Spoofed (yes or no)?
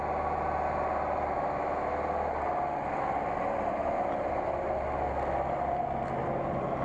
no